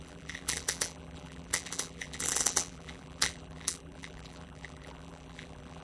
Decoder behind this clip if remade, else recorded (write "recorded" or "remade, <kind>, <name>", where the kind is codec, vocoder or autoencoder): remade, vocoder, BigVGAN v2